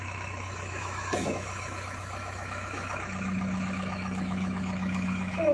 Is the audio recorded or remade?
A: remade